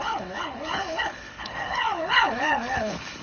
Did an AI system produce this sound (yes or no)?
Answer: yes